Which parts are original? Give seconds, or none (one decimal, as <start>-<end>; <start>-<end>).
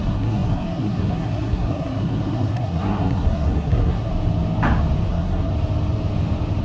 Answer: 4.1-5.1; 5.5-6.6